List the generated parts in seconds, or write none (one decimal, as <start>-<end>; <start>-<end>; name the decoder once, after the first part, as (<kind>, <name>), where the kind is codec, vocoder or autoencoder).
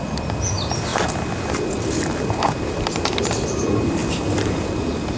0.0-0.9 (vocoder, BigVGAN v2); 1.5-5.2